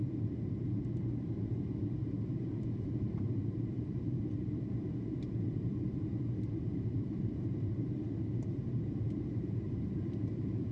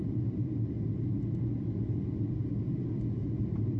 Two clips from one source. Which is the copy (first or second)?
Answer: first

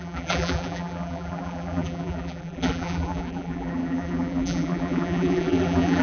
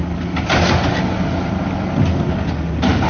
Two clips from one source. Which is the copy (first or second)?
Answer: first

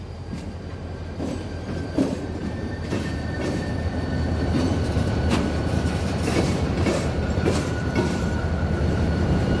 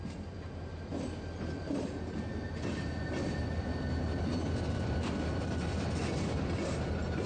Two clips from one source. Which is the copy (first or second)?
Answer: first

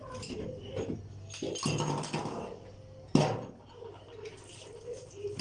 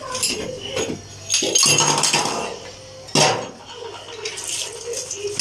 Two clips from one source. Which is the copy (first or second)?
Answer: first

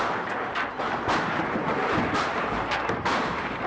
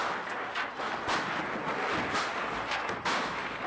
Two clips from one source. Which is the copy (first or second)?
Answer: first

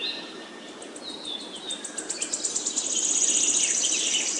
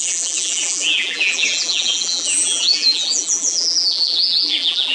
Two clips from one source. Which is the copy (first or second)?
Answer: second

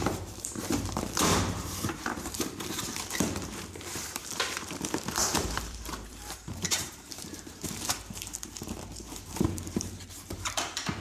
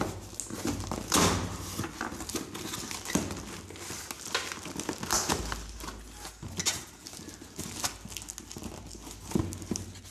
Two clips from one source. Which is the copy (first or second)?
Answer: first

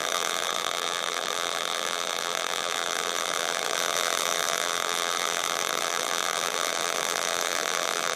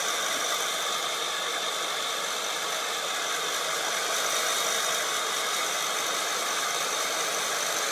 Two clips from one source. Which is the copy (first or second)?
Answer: first